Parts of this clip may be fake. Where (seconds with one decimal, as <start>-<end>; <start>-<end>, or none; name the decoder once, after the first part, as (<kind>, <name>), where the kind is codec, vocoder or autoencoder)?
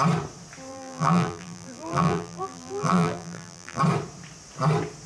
0.7-3.8 (vocoder, BigVGAN v2)